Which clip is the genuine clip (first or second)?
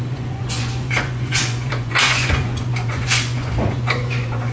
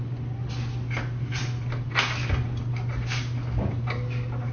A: second